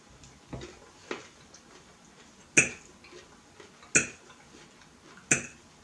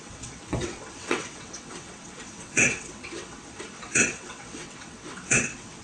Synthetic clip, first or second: second